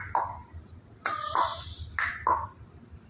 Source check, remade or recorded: recorded